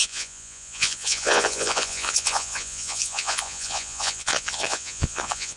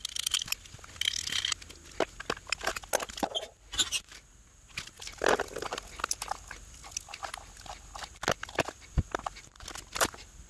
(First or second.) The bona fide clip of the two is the second